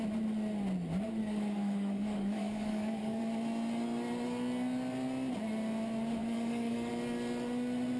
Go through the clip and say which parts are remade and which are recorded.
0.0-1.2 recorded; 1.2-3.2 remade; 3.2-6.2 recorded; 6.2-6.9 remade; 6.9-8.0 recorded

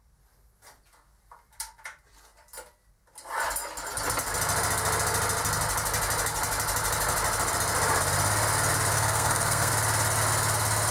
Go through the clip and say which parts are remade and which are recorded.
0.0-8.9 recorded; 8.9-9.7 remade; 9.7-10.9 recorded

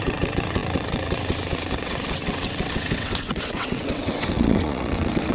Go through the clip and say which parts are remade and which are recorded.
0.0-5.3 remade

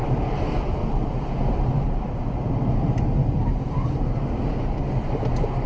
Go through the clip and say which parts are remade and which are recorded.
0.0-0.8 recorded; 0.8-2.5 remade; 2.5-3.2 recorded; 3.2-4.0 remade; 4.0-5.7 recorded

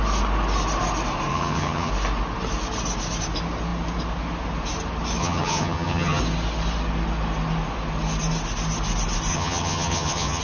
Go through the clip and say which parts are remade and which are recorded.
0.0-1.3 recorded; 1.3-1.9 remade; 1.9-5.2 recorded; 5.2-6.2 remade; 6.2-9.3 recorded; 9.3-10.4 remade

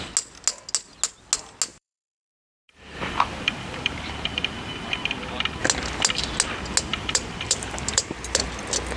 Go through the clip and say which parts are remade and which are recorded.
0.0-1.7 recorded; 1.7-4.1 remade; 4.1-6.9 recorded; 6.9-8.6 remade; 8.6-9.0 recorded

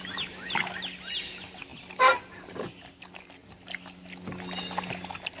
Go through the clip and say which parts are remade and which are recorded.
0.0-5.4 recorded